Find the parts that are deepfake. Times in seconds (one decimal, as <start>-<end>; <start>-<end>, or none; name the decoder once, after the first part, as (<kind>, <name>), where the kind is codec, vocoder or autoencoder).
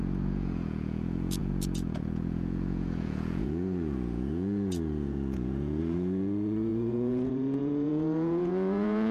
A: 0.0-9.1 (vocoder, Vocos)